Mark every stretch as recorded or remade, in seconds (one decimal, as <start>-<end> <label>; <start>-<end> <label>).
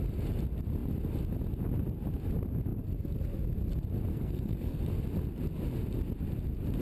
0.0-4.1 recorded; 4.1-4.8 remade; 4.8-6.8 recorded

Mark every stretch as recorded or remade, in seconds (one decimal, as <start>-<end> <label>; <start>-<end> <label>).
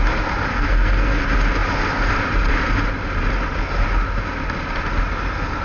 0.0-0.5 recorded; 0.5-1.2 remade; 1.2-5.6 recorded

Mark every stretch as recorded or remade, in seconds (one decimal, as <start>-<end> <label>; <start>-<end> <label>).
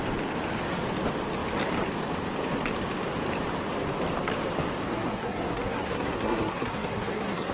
0.0-4.9 recorded; 4.9-7.5 remade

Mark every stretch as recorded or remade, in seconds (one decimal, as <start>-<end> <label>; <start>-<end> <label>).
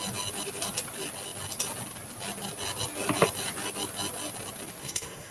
0.0-4.8 recorded; 4.8-5.3 remade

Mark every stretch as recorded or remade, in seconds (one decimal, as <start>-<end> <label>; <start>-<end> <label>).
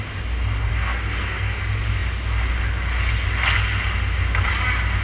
0.0-0.7 recorded; 0.7-1.6 remade; 1.6-5.0 recorded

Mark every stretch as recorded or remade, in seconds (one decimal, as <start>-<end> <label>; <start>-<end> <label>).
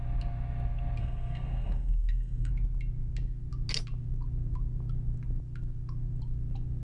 0.0-1.0 recorded; 1.0-2.5 remade; 2.5-6.8 recorded